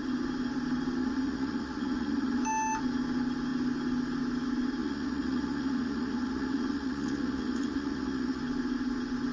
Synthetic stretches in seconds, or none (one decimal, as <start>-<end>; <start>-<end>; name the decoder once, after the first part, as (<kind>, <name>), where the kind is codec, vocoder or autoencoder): 1.0-2.4 (vocoder, Vocos); 4.8-8.4

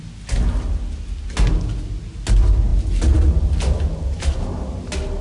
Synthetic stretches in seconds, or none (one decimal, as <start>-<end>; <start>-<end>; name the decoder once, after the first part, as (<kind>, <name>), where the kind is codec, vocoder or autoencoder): none

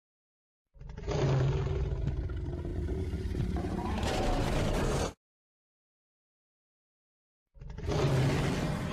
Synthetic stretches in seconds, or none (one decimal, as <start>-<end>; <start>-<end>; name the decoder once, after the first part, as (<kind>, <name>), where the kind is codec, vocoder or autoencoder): 2.7-5.4 (vocoder, BigVGAN v2)

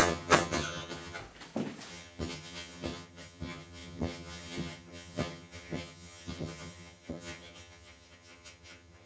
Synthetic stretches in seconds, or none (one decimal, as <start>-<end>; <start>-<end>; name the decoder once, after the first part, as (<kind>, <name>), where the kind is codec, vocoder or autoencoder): 0.0-1.2 (vocoder, HiFi-GAN); 1.9-9.1

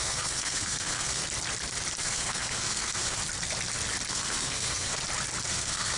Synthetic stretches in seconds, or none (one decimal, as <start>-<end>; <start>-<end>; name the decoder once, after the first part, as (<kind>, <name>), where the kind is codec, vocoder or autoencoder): 0.0-1.2 (codec, SNAC); 2.0-3.2; 4.1-5.0; 5.5-6.0

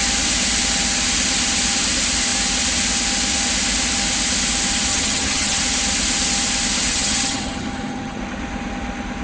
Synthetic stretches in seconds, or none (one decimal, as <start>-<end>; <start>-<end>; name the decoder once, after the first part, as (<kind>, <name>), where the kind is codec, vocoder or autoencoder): 4.9-5.6 (vocoder, HiFi-GAN); 6.9-8.2

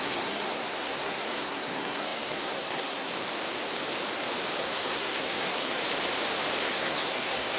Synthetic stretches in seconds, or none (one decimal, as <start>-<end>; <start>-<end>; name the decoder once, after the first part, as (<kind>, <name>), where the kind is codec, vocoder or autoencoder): 0.0-3.1 (codec, SNAC); 4.6-5.8; 6.6-7.6

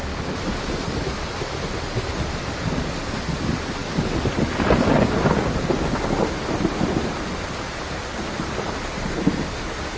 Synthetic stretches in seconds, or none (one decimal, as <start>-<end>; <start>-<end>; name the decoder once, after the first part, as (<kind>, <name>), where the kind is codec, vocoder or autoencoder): none